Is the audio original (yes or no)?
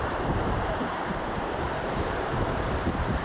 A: no